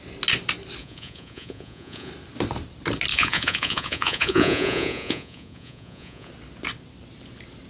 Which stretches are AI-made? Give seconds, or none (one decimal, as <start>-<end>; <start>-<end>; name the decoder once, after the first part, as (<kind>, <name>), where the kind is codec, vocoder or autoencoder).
0.8-2.1 (vocoder, Vocos); 3.1-6.3

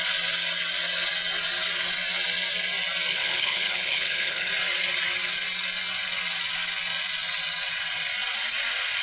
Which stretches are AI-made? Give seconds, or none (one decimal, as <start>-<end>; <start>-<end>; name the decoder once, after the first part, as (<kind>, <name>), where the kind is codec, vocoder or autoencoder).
3.1-4.5 (codec, HILCodec)